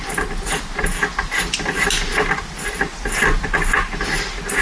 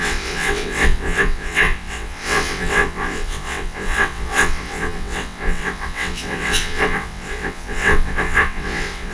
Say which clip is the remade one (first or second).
second